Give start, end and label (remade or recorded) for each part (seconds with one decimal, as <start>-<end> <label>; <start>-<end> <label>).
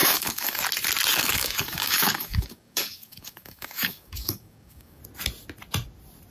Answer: 0.0-0.6 remade; 0.6-1.2 recorded; 1.2-5.0 remade; 5.0-6.3 recorded